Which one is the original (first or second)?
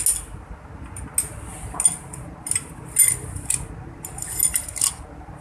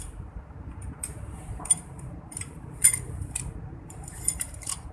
first